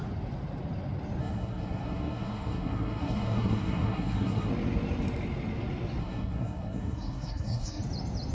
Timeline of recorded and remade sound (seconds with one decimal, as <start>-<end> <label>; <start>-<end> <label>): 0.0-1.2 recorded; 1.2-4.5 remade; 4.5-6.0 recorded; 6.0-7.8 remade; 7.8-8.3 recorded